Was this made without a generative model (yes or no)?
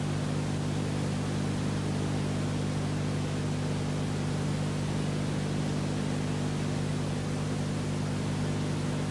yes